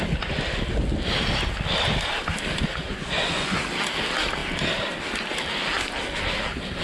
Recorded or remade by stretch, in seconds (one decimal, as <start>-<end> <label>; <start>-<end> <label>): 0.0-2.7 recorded; 2.7-3.6 remade; 3.6-6.8 recorded